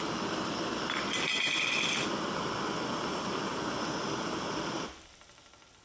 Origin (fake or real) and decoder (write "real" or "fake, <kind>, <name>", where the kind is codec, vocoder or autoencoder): real